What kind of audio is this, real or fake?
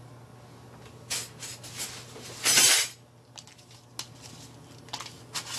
real